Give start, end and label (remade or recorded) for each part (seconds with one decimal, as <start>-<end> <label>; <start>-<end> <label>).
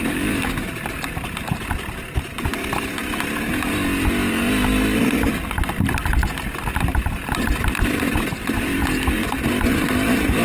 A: 0.0-10.4 recorded